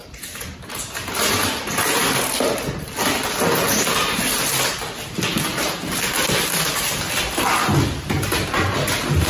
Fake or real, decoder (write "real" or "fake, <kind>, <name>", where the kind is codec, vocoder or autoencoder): real